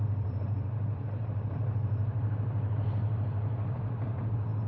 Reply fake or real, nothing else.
fake